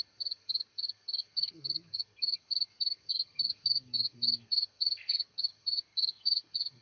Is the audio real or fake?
fake